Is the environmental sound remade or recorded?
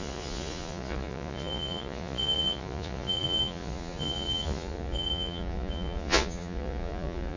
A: remade